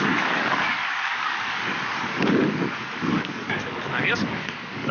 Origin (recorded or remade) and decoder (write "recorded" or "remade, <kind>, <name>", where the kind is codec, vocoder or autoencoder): remade, codec, DAC